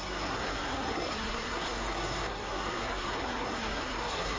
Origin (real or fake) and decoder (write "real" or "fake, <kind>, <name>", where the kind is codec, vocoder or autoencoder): fake, codec, SNAC